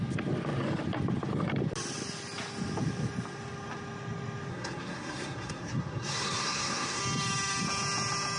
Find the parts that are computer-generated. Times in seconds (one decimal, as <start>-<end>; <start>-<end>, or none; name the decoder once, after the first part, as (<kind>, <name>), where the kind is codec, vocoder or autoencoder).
4.5-7.0 (codec, SNAC)